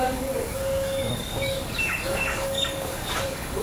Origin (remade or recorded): remade